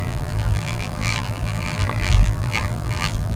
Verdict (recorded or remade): remade